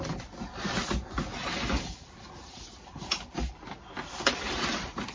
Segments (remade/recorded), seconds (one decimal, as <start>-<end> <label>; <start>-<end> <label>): 0.0-5.1 recorded